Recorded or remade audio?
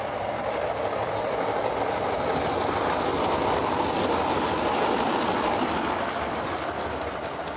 recorded